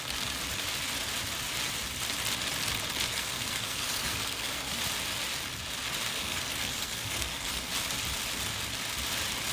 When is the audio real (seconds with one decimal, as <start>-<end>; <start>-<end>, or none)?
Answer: 0.0-3.1; 4.8-6.1; 7.7-9.5